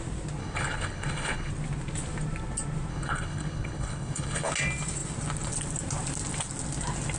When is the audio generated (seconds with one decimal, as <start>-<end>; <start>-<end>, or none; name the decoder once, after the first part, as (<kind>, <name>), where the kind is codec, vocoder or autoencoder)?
0.4-1.5 (codec, HILCodec); 2.9-4.5